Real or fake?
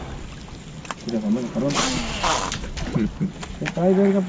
real